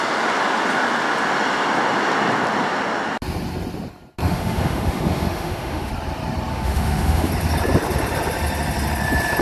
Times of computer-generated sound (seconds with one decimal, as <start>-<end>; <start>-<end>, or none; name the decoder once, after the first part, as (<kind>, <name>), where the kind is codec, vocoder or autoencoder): 4.2-5.9 (autoencoder, DAC-VAE); 6.5-7.3